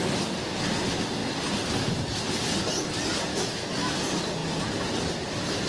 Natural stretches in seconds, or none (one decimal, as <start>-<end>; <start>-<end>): 0.0-3.3; 3.9-5.7